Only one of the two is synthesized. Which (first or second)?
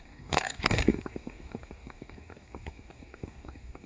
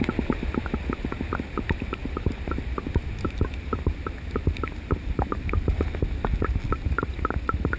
first